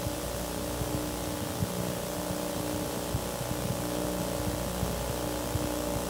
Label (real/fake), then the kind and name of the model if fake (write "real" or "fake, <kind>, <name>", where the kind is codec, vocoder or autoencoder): real